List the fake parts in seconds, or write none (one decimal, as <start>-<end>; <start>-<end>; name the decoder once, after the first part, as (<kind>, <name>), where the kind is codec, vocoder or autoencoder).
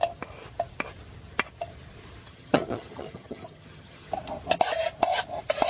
2.2-4.1 (vocoder, HiFi-GAN)